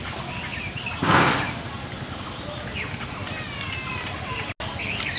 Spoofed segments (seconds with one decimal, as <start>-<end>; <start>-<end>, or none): none